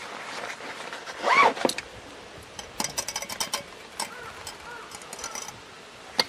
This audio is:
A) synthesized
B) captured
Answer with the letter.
B